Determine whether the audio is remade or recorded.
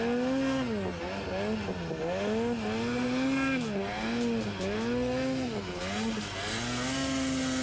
recorded